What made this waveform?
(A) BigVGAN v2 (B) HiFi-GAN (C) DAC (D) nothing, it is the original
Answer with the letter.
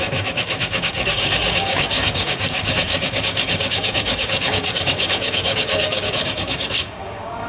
C